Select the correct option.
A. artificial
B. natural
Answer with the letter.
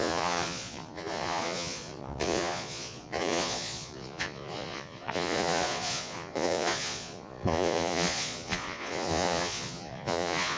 A